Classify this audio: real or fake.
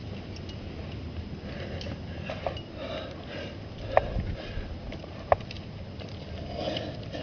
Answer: real